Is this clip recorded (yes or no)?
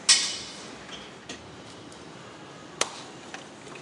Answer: yes